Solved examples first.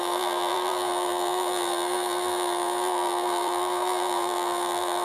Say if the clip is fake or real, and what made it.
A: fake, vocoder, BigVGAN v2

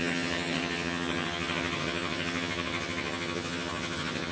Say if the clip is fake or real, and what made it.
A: fake, vocoder, HiFi-GAN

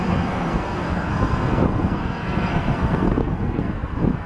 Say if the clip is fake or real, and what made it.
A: fake, codec, SNAC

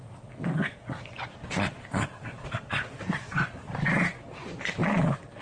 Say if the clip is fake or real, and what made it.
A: real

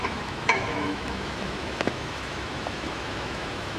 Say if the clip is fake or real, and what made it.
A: fake, autoencoder, DAC-VAE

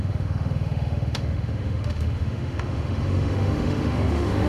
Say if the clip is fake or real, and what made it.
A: fake, autoencoder, DAC-VAE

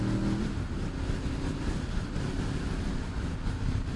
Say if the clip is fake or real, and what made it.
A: real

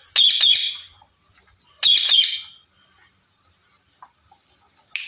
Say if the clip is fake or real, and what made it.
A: real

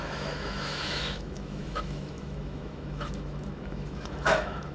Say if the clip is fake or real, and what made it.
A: fake, autoencoder, DAC-VAE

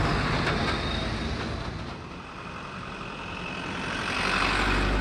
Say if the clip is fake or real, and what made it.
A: real